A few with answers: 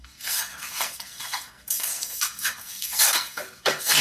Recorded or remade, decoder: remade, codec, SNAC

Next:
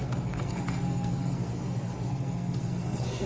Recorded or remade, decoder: remade, codec, SNAC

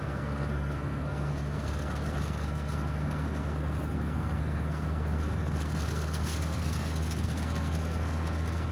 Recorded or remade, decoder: remade, codec, SNAC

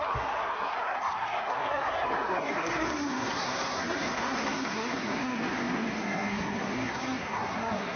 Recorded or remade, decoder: remade, codec, SNAC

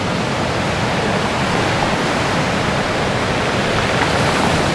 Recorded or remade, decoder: recorded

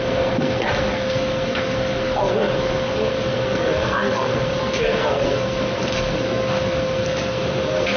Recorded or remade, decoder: remade, codec, SNAC